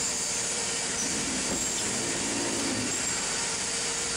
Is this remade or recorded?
remade